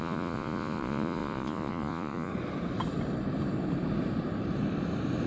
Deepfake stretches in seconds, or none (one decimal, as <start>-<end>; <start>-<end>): 0.0-2.3

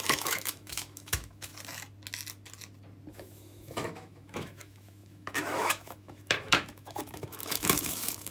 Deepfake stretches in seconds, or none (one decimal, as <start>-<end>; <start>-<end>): 0.0-1.5; 3.1-8.3

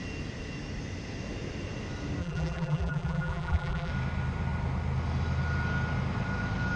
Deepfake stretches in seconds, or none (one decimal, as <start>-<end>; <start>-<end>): 2.2-3.9

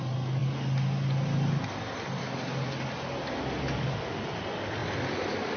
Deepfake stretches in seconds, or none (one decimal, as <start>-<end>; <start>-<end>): none

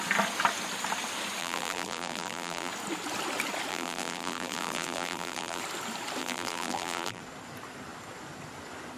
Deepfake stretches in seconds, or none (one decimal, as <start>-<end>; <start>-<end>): 1.4-2.7; 3.7-5.6; 6.2-7.2

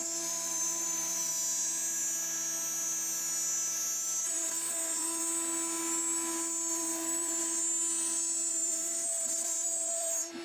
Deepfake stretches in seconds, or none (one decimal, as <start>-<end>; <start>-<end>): 0.0-1.3; 4.2-5.2; 6.7-7.4; 8.5-10.4